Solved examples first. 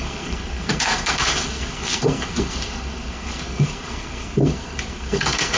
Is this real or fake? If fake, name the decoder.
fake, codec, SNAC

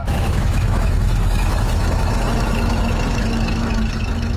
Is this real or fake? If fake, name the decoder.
fake, autoencoder, DAC-VAE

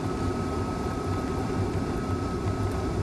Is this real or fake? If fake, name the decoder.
fake, vocoder, BigVGAN v2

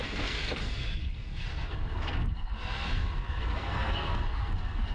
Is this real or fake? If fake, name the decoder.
fake, codec, SNAC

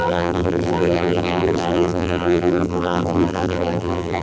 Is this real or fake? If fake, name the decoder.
fake, vocoder, BigVGAN v2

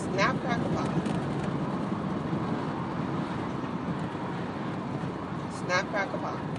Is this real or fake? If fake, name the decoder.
real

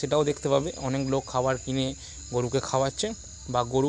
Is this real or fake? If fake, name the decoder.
real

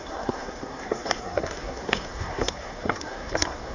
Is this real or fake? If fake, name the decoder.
fake, codec, SNAC